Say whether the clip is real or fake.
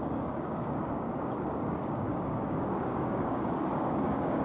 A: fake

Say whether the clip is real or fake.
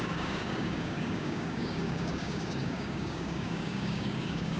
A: fake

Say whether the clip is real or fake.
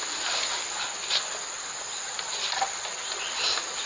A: real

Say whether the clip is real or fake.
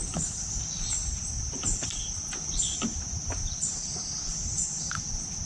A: real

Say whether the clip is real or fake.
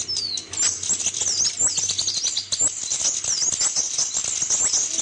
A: real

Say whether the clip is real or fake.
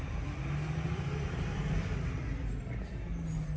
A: real